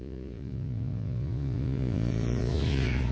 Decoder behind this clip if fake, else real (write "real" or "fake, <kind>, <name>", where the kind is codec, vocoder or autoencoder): fake, vocoder, Vocos